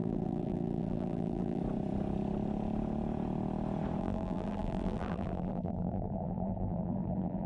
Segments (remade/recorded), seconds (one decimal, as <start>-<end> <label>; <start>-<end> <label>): 0.0-1.6 remade; 1.6-4.0 recorded; 4.0-7.5 remade